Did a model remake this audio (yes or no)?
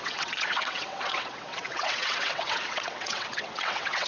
yes